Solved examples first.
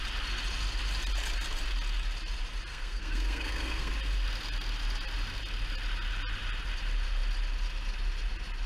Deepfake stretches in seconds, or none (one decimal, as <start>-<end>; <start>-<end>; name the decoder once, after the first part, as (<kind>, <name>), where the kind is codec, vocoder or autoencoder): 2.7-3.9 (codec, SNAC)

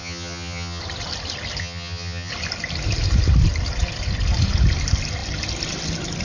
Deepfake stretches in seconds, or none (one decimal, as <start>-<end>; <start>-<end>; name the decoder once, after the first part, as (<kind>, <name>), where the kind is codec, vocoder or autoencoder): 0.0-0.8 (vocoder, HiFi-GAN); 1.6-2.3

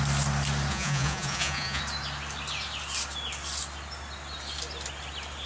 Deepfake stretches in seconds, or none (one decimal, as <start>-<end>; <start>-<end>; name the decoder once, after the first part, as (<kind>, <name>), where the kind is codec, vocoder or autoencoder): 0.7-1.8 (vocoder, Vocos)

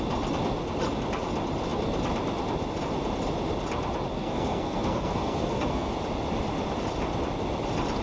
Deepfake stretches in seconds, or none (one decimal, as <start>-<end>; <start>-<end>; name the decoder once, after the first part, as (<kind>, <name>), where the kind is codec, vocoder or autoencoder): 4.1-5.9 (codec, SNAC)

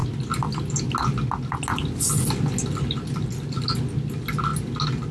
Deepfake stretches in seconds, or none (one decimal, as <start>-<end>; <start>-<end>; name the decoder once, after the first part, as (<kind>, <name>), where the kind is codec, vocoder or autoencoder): none

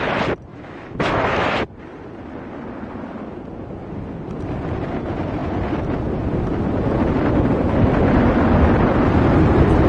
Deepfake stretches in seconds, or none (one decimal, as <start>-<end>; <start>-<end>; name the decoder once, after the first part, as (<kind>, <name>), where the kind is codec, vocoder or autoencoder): 0.5-1.6 (autoencoder, DAC-VAE)

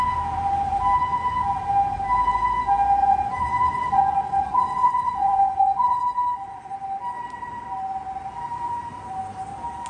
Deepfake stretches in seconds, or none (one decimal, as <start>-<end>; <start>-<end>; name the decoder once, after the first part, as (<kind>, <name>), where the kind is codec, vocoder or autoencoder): 3.0-6.0 (vocoder, Vocos)